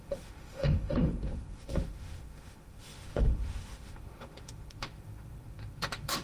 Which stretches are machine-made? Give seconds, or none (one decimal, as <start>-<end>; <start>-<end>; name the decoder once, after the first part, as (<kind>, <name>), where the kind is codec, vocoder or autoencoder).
0.0-6.2 (autoencoder, DAC-VAE)